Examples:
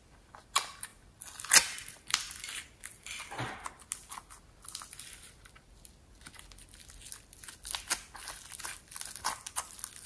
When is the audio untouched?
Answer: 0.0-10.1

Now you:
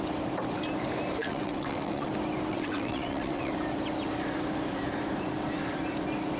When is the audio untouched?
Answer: 0.0-1.2; 2.1-2.5; 3.5-6.4